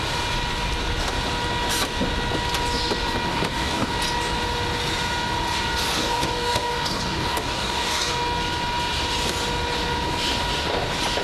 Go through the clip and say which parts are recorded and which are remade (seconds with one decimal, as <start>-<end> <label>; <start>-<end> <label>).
0.0-3.3 recorded; 3.3-3.9 remade; 3.9-6.0 recorded; 6.0-8.1 remade; 8.1-11.2 recorded